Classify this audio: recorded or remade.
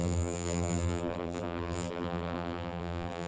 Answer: remade